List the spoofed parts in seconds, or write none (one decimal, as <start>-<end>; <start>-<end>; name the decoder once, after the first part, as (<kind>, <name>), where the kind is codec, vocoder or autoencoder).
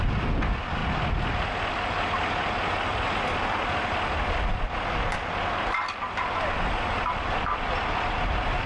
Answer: none